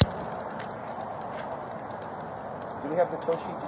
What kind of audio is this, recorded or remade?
recorded